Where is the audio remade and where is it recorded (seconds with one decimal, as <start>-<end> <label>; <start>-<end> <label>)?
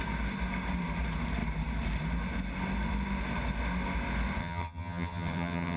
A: 0.0-4.4 recorded; 4.4-5.8 remade